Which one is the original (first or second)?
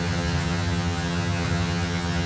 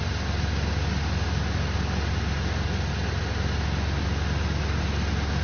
second